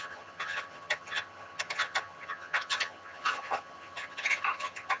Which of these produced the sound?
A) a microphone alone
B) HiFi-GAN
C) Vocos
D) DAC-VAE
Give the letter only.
B